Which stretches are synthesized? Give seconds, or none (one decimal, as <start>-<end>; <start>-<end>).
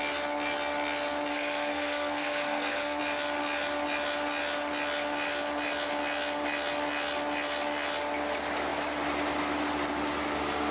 1.3-3.0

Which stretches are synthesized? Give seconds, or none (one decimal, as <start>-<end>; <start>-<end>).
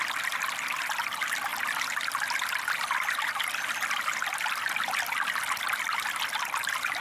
none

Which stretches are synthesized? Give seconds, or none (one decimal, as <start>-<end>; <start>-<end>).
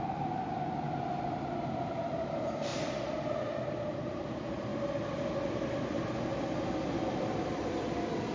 0.0-2.7; 3.9-4.7; 5.5-6.3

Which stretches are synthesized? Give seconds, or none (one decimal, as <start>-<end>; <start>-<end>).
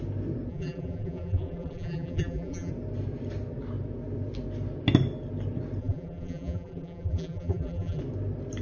0.5-2.7; 5.8-8.0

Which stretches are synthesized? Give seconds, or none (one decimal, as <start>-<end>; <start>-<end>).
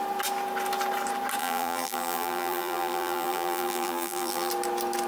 1.4-4.5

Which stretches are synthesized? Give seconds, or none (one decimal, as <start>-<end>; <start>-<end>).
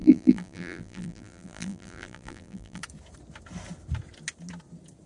0.0-2.8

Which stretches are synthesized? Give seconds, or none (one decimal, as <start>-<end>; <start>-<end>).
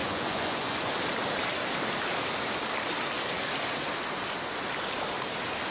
0.0-0.9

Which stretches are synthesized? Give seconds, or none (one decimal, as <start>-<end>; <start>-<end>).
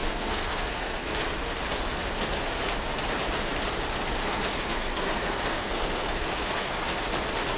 0.0-1.1; 4.2-7.0